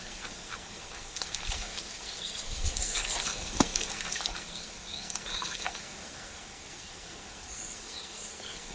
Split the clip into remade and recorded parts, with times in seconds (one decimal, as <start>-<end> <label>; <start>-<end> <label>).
0.0-8.7 remade